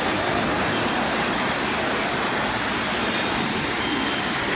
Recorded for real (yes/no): yes